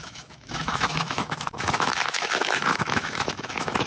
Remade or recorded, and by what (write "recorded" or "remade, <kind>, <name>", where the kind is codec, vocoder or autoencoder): remade, autoencoder, DAC-VAE